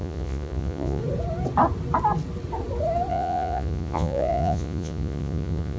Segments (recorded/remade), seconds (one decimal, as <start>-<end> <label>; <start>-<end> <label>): 0.0-1.0 remade; 1.0-3.1 recorded; 3.1-5.8 remade